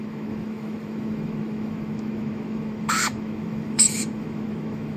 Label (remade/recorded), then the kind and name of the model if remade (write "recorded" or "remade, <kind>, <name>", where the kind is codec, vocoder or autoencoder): remade, autoencoder, DAC-VAE